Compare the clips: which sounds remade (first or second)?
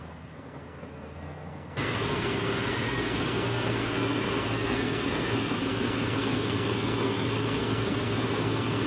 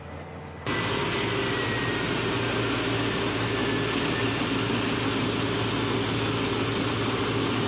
first